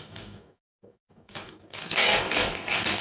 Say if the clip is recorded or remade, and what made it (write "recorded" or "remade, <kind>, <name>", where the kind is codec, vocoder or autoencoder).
remade, codec, DAC